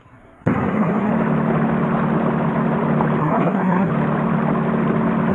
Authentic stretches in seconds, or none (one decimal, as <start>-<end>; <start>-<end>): 1.1-3.2; 3.9-5.3